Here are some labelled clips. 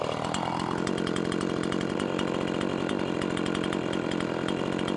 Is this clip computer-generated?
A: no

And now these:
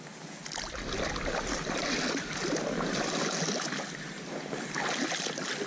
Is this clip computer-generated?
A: no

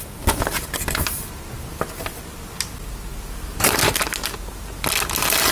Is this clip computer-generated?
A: no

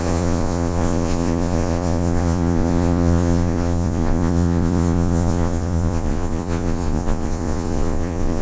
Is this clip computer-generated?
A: yes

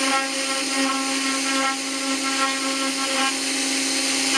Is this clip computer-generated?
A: no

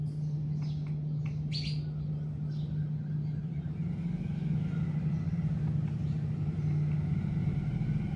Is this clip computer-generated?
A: no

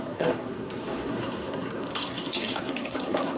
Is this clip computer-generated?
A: yes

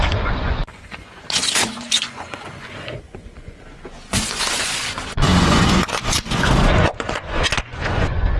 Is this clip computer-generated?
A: yes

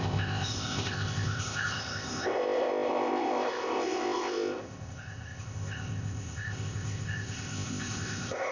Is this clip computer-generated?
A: yes